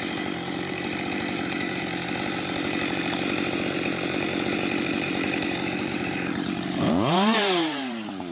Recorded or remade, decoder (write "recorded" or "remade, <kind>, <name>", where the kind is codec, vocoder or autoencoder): remade, vocoder, BigVGAN v2